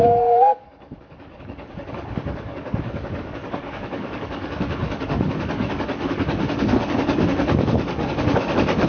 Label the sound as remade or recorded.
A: remade